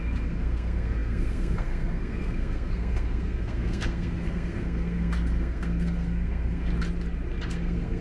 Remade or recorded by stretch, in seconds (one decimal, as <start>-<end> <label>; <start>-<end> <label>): 0.0-6.7 remade; 6.7-7.4 recorded; 7.4-8.0 remade